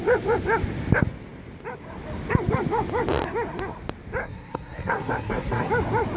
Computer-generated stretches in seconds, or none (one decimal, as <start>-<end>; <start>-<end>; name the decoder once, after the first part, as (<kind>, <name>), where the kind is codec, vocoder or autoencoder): 4.2-5.7 (codec, SNAC)